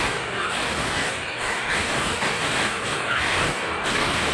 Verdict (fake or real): fake